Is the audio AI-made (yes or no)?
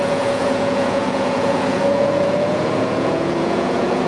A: yes